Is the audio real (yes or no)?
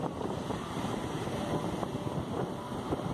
no